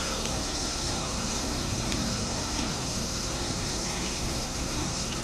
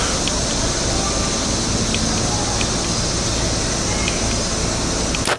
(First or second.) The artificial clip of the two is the first